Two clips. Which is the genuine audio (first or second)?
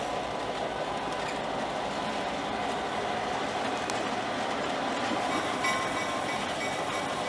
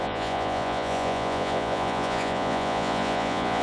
first